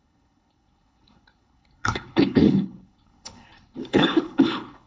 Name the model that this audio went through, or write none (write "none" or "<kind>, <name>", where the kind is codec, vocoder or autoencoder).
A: codec, HILCodec